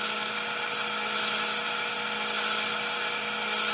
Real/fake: real